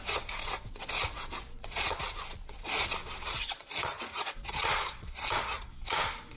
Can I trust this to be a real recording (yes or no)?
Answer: no